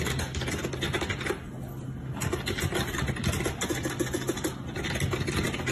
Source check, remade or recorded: recorded